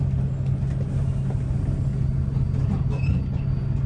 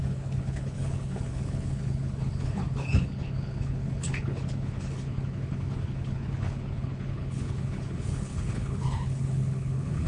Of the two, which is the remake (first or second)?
second